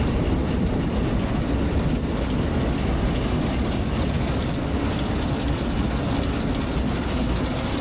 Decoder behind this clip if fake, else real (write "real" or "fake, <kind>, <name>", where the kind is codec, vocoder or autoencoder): real